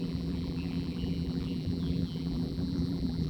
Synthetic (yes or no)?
yes